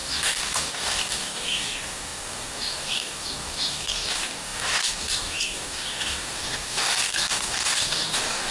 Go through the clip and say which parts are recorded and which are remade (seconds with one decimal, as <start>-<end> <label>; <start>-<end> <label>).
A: 0.0-8.5 remade